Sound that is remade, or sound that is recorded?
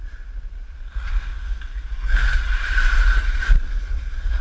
recorded